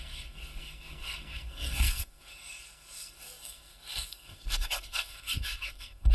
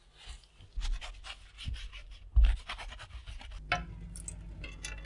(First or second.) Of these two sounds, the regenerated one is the first